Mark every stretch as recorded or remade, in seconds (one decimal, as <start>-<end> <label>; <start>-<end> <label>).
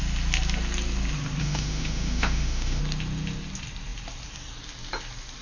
0.0-1.4 recorded; 1.4-2.8 remade; 2.8-5.4 recorded